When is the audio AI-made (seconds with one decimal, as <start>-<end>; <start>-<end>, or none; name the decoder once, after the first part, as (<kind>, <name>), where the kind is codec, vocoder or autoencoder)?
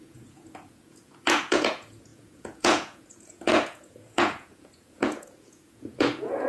0.0-6.5 (vocoder, Vocos)